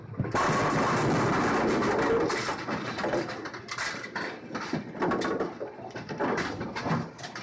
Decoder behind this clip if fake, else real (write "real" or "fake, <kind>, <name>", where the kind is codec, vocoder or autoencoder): real